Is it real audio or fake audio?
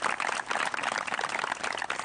real